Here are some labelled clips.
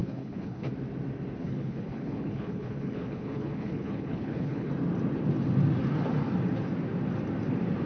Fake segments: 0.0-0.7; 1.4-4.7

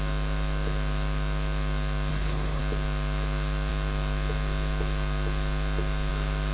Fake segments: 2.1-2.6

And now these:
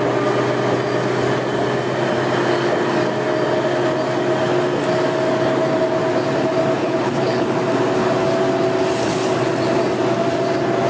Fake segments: 6.8-7.5

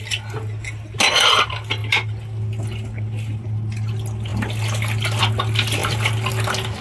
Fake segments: none